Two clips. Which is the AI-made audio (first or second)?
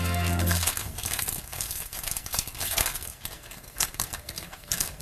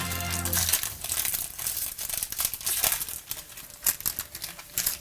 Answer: first